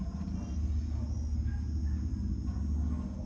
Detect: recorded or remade recorded